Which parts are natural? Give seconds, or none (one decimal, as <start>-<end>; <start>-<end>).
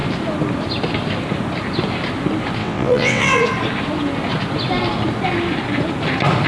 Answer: 0.0-2.6; 3.4-6.5